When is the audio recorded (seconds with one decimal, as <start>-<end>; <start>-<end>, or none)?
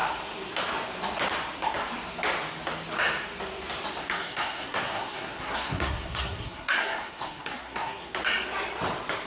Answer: 0.0-4.0; 8.1-9.3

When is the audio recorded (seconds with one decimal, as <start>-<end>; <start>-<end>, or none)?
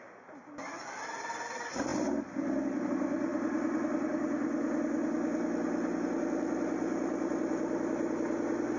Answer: 0.0-8.8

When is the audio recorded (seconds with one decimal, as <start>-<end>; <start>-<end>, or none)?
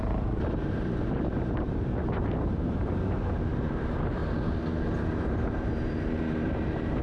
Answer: 4.2-5.0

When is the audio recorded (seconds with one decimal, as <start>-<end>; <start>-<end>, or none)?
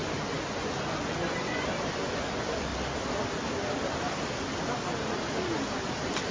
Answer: 2.7-6.3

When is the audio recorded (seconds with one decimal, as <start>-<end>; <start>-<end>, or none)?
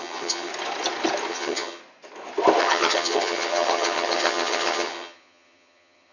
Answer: 0.5-1.3; 1.8-2.6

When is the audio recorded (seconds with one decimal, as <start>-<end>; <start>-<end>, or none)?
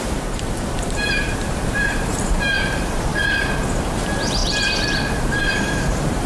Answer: 3.1-3.8; 4.4-5.1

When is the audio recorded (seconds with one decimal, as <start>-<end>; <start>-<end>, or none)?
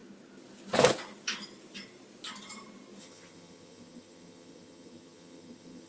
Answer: 0.0-3.0